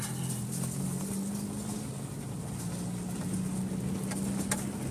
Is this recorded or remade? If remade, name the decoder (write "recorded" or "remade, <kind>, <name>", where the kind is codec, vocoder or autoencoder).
recorded